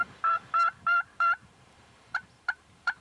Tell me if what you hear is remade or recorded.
remade